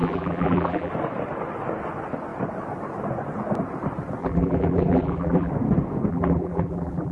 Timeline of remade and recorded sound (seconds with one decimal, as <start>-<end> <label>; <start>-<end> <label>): 0.0-0.9 remade; 0.9-4.2 recorded; 4.2-5.5 remade; 5.5-6.1 recorded; 6.1-7.1 remade